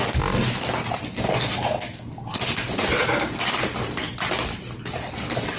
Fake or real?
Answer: real